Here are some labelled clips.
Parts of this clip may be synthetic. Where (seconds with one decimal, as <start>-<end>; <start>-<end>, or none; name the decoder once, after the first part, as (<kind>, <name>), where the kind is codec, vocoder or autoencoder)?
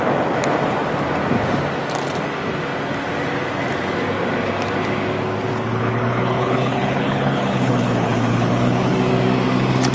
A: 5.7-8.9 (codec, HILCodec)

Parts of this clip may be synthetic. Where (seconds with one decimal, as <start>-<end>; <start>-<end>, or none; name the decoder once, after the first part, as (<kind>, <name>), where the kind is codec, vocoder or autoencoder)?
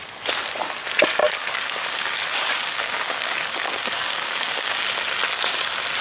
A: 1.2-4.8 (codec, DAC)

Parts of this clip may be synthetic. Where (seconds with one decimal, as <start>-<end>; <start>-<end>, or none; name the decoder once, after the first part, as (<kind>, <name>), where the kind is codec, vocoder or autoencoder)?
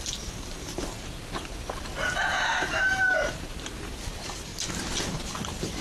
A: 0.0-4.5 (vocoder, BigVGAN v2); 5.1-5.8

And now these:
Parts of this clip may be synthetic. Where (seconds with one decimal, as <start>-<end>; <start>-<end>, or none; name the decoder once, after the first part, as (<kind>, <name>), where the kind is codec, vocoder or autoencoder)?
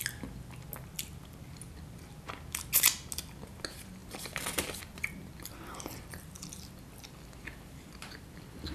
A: 4.0-5.1 (vocoder, BigVGAN v2)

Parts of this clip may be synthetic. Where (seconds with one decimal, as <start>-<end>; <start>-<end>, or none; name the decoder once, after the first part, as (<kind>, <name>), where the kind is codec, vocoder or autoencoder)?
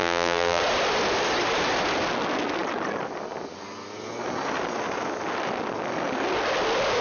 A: 0.0-0.6 (vocoder, BigVGAN v2)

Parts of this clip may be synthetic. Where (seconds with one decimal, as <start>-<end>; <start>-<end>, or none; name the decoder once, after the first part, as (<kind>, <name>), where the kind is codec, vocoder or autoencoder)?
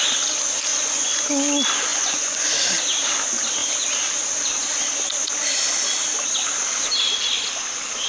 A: 0.7-1.3 (vocoder, Vocos); 1.9-2.5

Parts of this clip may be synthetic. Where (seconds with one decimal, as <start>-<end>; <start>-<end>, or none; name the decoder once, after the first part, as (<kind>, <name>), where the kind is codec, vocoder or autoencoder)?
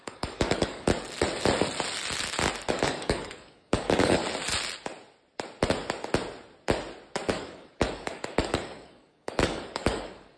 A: 0.0-0.9 (codec, DAC); 2.7-4.2; 7.3-10.4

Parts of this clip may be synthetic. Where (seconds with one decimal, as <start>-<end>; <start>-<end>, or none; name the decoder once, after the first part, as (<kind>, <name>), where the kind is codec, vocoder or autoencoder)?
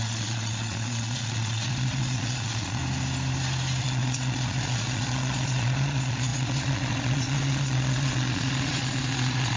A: 0.0-2.8 (vocoder, Vocos); 3.8-9.6